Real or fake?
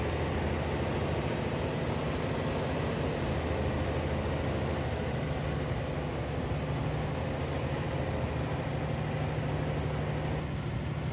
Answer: real